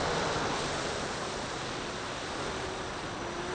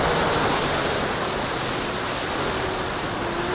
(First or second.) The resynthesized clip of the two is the first